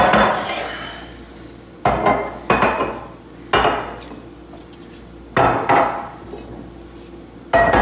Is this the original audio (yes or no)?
yes